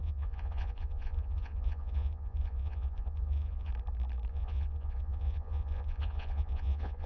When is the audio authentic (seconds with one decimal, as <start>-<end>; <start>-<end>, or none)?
3.7-4.3